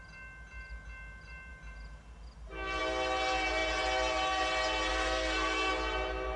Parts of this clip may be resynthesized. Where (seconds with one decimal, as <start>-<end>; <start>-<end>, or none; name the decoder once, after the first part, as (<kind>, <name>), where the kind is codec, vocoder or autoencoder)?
4.9-5.7 (codec, SNAC)